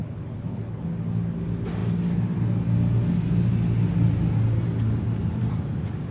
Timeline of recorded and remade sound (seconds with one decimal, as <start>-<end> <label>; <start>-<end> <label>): 0.0-0.9 remade; 0.9-6.1 recorded